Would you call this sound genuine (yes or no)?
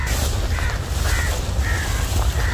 yes